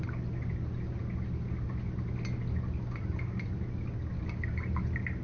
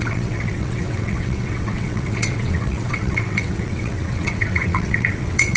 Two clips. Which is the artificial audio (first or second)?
second